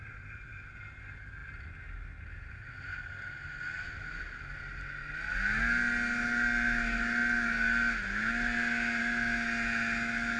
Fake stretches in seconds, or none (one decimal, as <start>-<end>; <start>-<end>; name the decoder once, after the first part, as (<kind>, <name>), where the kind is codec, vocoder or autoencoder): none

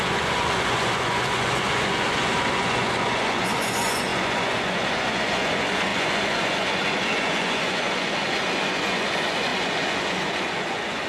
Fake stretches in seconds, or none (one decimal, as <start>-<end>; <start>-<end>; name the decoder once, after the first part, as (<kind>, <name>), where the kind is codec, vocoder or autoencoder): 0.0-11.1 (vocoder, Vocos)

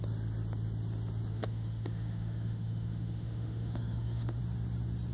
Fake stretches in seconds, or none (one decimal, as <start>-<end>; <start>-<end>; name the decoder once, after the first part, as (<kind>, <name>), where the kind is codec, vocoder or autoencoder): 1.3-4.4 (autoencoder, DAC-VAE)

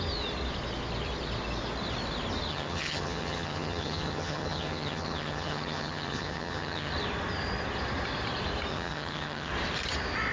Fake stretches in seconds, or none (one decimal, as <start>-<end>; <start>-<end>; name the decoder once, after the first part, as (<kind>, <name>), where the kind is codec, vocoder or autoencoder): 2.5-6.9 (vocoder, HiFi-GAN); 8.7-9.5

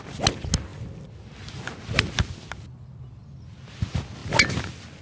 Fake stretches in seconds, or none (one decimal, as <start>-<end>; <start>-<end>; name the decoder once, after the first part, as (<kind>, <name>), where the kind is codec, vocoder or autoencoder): none

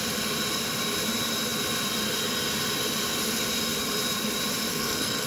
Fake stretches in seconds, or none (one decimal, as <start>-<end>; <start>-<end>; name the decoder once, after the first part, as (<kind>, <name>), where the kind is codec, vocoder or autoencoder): 4.7-5.3 (codec, SNAC)

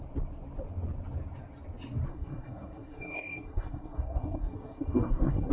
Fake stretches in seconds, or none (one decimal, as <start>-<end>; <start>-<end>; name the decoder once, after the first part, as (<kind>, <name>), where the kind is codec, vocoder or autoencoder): 2.1-5.5 (codec, SNAC)

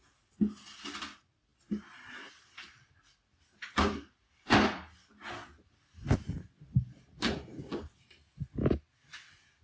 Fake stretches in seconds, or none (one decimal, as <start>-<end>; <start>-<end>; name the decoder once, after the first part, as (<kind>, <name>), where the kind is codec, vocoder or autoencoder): none